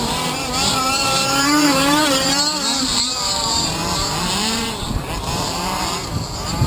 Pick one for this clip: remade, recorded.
remade